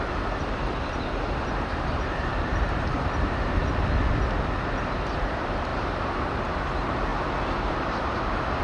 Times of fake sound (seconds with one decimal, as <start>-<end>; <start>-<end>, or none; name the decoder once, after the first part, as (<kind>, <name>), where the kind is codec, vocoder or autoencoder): 0.0-3.6 (vocoder, BigVGAN v2); 4.9-7.1; 7.7-8.6